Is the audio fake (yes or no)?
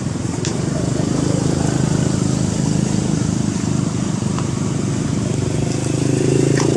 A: no